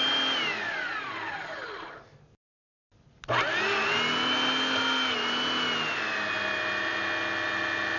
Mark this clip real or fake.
real